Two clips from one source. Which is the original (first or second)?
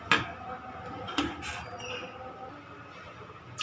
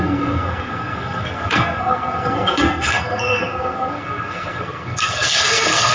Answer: first